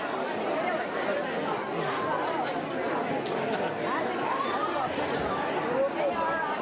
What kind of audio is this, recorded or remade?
recorded